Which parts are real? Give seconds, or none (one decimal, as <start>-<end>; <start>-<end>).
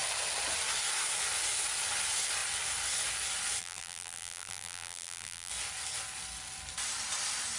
0.0-3.6; 5.5-7.6